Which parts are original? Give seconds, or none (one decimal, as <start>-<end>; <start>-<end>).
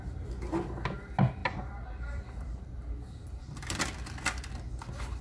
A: 0.0-1.4; 4.5-5.2